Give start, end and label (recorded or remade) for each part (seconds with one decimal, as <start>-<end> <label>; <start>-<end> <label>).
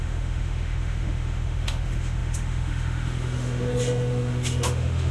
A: 0.0-5.1 remade